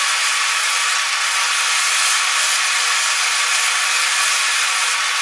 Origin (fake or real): real